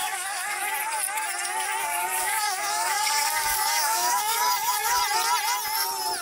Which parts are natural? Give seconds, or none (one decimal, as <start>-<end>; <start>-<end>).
0.7-1.8; 5.0-6.2